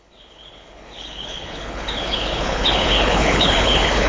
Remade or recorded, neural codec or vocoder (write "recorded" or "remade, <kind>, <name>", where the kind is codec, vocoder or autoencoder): remade, codec, HILCodec